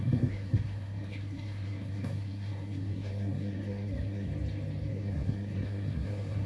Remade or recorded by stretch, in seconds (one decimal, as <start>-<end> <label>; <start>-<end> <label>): 0.0-4.3 remade; 4.3-4.9 recorded; 4.9-6.5 remade